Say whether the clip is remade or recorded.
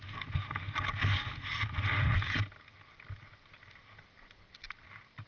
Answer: recorded